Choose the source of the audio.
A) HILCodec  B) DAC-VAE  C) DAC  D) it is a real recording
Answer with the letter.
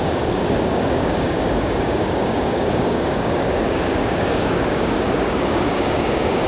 C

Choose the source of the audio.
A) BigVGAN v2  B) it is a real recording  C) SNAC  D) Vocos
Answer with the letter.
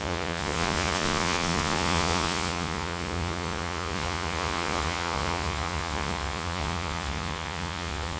D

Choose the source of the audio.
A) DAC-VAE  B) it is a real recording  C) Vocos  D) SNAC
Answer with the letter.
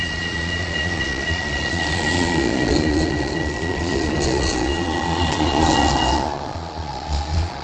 C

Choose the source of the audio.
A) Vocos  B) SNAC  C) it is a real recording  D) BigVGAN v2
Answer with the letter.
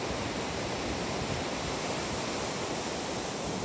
C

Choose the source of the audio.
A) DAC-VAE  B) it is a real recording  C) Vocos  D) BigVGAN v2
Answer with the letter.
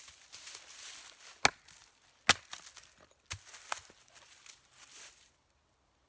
B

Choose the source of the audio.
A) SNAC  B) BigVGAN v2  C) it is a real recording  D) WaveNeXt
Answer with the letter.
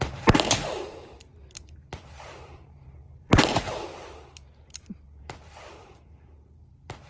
B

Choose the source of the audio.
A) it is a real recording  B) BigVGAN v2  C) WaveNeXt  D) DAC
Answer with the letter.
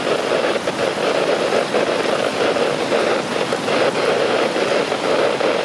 A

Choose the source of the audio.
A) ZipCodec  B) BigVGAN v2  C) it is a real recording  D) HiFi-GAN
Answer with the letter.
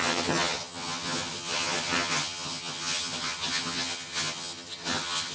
D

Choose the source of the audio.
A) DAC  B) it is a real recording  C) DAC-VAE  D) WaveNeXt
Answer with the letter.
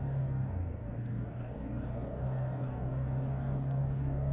A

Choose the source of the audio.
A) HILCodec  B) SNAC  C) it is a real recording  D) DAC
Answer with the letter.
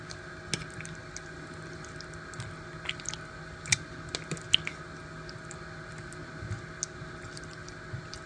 C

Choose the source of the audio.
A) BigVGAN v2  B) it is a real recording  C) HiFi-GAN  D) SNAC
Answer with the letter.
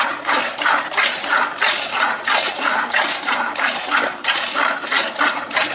A